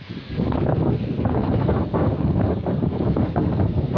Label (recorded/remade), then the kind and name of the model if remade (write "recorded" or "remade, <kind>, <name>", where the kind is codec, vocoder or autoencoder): remade, codec, SNAC